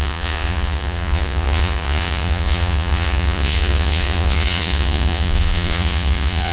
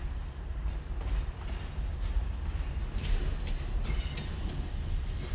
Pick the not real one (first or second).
first